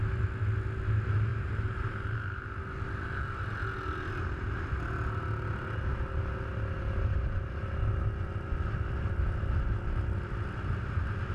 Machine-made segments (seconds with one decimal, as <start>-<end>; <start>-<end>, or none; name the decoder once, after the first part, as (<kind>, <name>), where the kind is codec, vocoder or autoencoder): 1.3-2.4 (vocoder, BigVGAN v2)